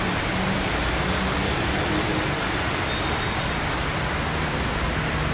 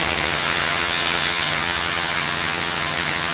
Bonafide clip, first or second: first